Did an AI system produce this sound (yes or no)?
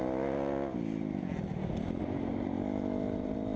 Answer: no